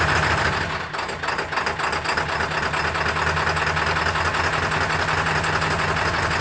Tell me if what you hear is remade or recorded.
recorded